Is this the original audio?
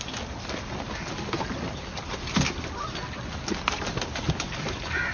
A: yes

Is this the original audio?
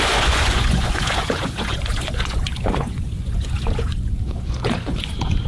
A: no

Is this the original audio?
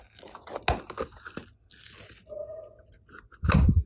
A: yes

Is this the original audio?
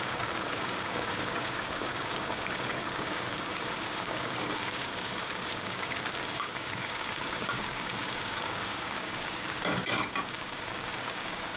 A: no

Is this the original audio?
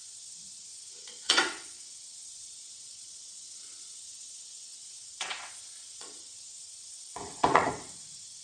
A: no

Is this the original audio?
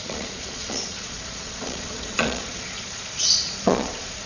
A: no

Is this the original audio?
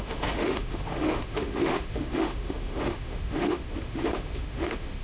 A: no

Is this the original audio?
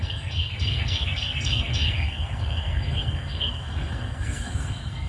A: no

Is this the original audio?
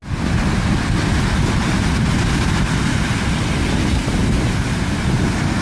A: yes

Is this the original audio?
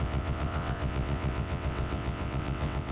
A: no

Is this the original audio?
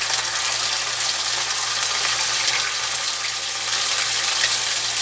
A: yes